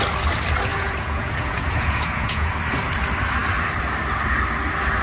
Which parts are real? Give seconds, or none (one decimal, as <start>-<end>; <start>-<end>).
0.0-0.7; 2.5-5.0